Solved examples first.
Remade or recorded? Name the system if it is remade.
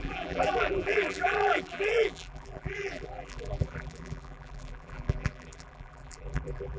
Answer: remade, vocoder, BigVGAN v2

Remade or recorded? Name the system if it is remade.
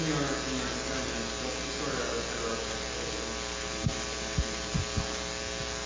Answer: recorded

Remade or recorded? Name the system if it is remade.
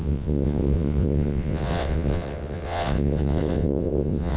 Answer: remade, vocoder, WaveNeXt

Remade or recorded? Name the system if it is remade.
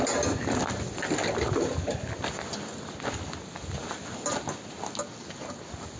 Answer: recorded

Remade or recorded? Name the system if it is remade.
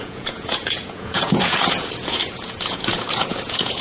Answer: remade, vocoder, Vocos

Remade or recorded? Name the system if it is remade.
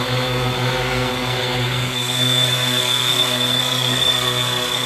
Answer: remade, codec, SNAC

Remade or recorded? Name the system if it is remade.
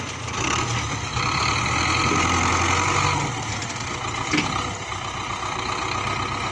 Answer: recorded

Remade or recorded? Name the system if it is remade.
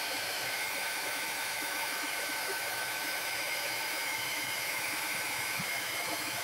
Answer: remade, autoencoder, DAC-VAE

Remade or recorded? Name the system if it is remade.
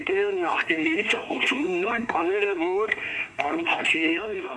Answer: remade, codec, SNAC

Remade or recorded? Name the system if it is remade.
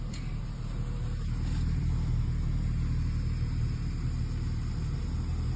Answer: remade, vocoder, BigVGAN v2